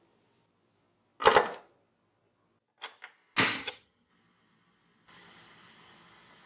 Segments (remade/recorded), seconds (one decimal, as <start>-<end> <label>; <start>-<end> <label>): 0.0-3.6 recorded; 3.6-4.1 remade; 4.1-6.5 recorded

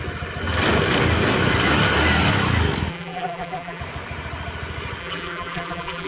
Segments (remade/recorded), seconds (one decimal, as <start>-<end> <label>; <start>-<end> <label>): 0.0-2.9 recorded; 2.9-3.8 remade; 3.8-5.0 recorded; 5.0-6.1 remade

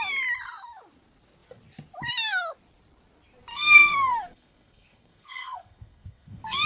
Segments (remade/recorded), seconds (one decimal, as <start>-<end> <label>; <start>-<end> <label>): 0.0-3.5 recorded; 3.5-6.7 remade

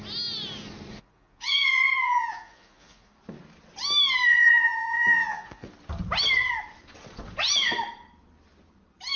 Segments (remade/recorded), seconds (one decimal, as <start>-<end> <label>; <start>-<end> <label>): 0.0-0.9 recorded; 0.9-3.1 remade; 3.1-4.3 recorded; 4.3-5.7 remade; 5.7-9.2 recorded

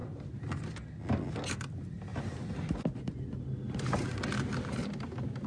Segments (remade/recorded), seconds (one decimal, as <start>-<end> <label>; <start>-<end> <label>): 0.0-5.5 recorded